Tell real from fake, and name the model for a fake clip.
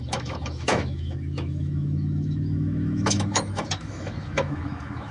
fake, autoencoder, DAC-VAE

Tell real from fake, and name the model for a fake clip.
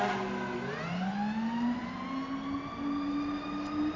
real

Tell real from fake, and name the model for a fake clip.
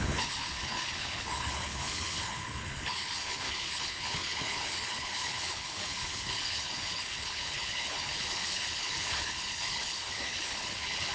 fake, codec, HILCodec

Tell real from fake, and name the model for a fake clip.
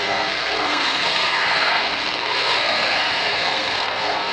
fake, codec, SNAC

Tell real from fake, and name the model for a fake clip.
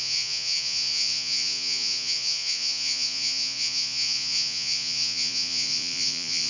fake, vocoder, Vocos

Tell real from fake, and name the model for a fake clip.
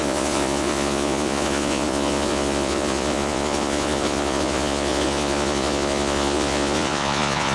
fake, vocoder, Vocos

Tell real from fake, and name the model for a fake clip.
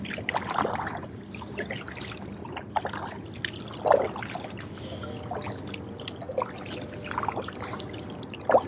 real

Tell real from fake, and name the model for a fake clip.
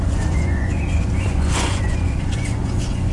fake, vocoder, Vocos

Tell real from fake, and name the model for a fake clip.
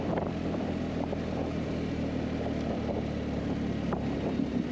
fake, vocoder, BigVGAN v2